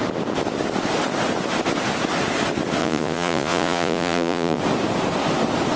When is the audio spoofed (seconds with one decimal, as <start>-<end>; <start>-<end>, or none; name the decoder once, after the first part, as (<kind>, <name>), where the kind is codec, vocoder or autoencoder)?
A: 2.8-4.6 (vocoder, Vocos)